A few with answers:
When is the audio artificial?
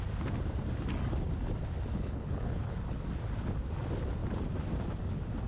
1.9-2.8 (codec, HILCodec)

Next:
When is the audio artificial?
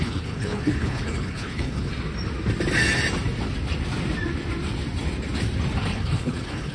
0.0-1.9 (codec, HILCodec); 5.9-6.7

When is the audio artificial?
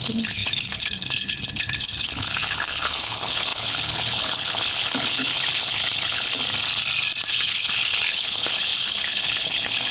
0.0-6.4 (codec, HILCodec); 7.3-9.9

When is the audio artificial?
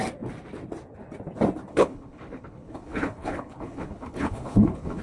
1.7-5.0 (codec, HILCodec)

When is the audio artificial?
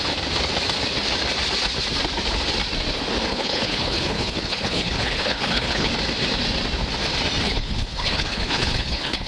3.3-5.9 (codec, HILCodec); 7.4-9.3